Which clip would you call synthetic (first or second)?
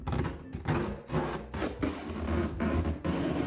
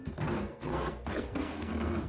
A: second